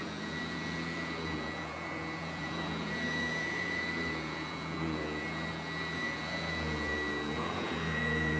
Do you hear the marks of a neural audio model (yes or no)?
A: yes